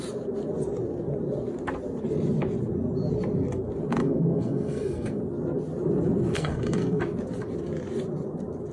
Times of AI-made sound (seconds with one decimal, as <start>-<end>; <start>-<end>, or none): 4.0-5.2; 6.3-7.0